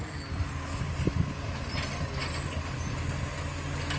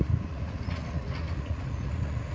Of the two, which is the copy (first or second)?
second